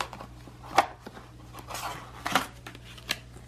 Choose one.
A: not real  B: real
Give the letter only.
B